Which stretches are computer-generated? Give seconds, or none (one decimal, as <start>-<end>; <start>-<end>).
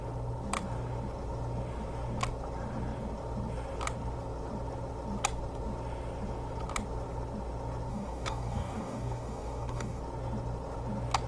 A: 7.9-10.0